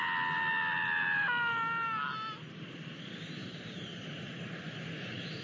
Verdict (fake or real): real